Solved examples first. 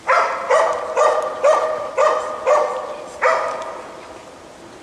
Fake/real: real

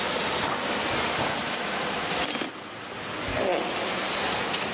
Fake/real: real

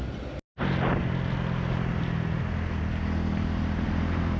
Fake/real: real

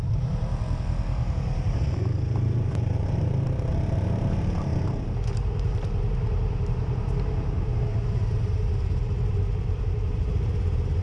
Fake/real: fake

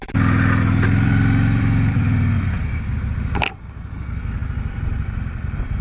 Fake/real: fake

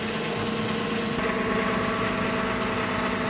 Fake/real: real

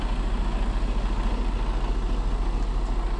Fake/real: real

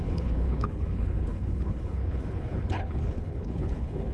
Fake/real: fake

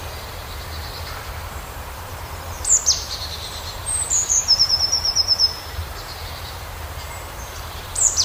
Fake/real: fake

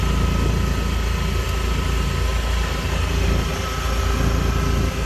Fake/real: real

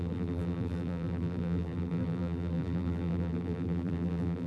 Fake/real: fake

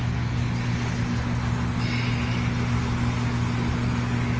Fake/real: real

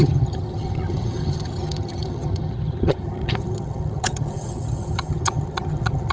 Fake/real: fake